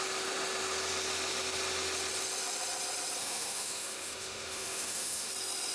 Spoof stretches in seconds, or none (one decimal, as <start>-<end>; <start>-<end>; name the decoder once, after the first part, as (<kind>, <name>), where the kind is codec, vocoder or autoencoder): 3.2-5.3 (autoencoder, DAC-VAE)